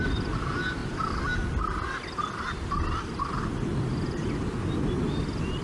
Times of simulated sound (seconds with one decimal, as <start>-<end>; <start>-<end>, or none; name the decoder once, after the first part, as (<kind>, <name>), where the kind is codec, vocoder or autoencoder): none